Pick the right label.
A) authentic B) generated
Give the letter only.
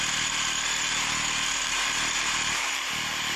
B